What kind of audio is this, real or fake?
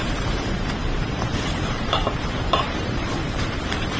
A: fake